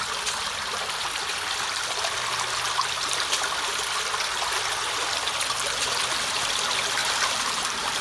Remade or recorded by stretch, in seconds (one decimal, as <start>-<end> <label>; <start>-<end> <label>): 0.0-7.0 recorded; 7.0-8.0 remade